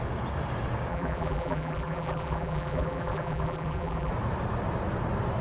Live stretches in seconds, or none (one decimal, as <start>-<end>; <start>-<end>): 0.0-0.9; 4.1-5.4